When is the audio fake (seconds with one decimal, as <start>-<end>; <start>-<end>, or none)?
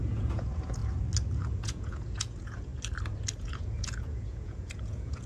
0.0-0.8; 1.5-2.7; 3.4-5.3